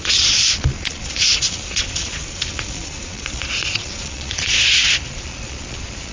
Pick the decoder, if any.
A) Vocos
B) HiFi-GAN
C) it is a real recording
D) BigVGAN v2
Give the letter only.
A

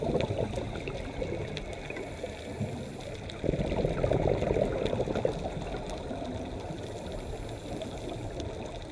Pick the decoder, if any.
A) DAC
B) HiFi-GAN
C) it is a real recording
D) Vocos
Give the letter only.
C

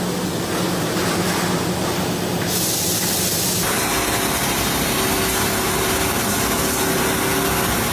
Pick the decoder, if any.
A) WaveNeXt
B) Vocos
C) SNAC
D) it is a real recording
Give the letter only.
D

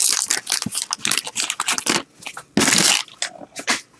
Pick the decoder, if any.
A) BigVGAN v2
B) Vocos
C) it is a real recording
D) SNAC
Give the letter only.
C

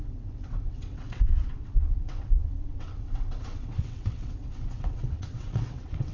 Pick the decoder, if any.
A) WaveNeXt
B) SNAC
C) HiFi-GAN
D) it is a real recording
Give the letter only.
A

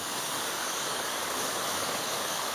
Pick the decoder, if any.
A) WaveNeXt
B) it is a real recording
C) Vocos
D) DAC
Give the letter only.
D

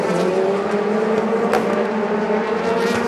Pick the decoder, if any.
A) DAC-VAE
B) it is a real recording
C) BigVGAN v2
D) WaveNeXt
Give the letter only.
B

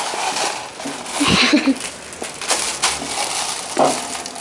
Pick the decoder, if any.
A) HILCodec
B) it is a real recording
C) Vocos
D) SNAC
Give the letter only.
B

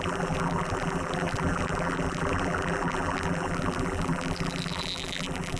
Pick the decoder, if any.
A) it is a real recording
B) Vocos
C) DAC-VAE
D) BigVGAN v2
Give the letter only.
D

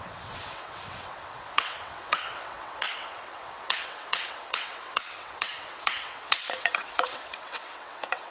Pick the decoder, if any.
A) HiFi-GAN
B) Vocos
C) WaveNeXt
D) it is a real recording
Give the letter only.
C